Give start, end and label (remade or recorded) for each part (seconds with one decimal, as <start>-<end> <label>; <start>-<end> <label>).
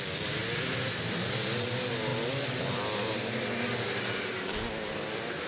0.0-5.5 recorded